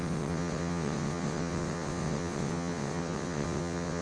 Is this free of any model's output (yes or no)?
no